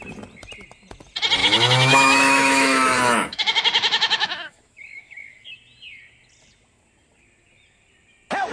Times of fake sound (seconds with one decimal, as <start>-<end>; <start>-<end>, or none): 1.4-5.5